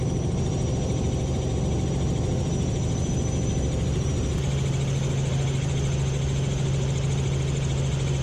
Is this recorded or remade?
recorded